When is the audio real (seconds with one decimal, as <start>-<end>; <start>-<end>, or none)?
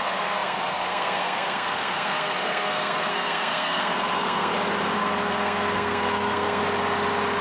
4.5-5.0; 6.6-7.4